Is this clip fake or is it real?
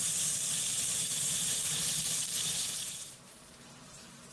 fake